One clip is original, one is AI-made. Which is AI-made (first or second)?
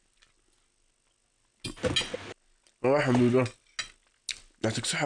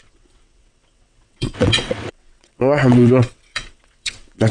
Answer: second